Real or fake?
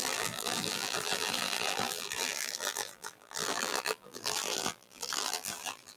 fake